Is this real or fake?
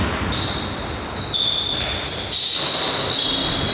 real